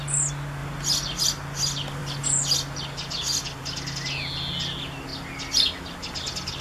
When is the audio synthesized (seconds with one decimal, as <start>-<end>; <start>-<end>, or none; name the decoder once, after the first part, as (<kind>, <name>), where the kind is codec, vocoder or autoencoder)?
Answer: none